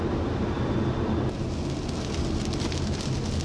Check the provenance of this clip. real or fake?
real